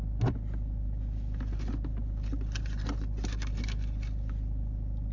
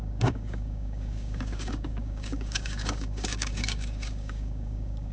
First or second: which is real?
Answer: first